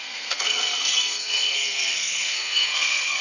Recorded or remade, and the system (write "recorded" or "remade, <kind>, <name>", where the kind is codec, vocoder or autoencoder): remade, codec, SNAC